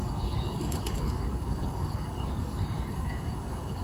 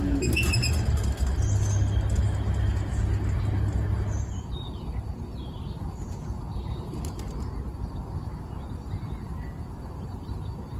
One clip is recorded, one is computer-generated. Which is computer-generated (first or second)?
first